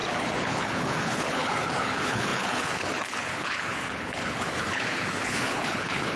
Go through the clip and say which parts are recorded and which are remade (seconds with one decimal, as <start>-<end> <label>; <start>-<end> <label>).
0.0-6.2 remade